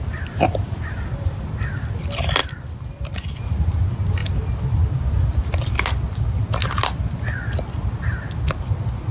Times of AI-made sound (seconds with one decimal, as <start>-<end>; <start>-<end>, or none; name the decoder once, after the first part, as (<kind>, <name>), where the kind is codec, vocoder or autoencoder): none